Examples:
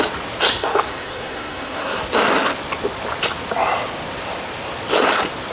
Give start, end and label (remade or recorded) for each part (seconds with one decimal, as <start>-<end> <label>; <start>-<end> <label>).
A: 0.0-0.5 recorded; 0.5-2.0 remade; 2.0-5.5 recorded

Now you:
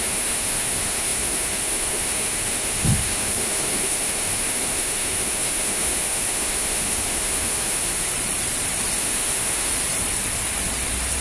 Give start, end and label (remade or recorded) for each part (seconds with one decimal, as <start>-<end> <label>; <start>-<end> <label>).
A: 0.0-8.1 remade; 8.1-9.0 recorded; 9.0-9.7 remade; 9.7-11.2 recorded

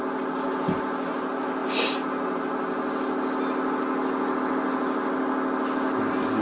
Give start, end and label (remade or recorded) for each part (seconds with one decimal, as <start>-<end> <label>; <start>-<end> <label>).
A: 0.0-6.4 recorded

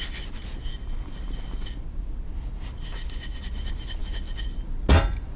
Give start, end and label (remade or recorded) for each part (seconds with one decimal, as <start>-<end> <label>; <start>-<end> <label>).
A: 0.0-5.4 recorded

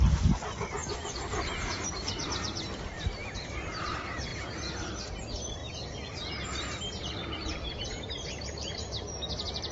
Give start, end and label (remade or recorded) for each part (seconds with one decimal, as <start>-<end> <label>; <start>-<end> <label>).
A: 0.0-0.8 recorded; 0.8-2.0 remade; 2.0-4.3 recorded; 4.3-5.0 remade; 5.0-5.6 recorded; 5.6-9.7 remade

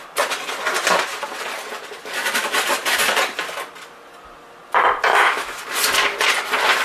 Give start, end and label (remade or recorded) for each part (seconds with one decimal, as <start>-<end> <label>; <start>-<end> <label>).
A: 0.0-5.1 recorded; 5.1-5.6 remade; 5.6-6.8 recorded

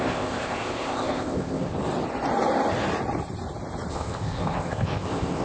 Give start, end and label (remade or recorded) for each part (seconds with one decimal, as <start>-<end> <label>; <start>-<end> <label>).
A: 0.0-1.7 remade; 1.7-3.9 recorded; 3.9-5.4 remade

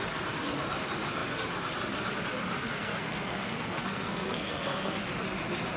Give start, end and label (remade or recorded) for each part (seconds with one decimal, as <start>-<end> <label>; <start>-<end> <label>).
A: 0.0-2.7 recorded; 2.7-5.1 remade; 5.1-5.8 recorded